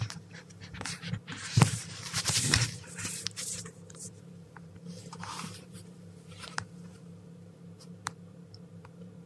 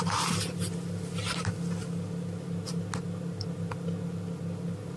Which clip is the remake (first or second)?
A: first